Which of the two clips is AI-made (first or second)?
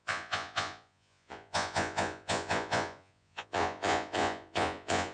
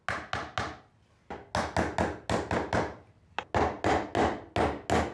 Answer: first